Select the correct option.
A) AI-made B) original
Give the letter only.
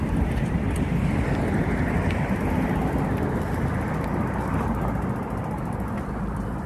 B